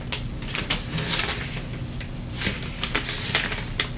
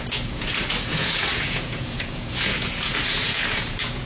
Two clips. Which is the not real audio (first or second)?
second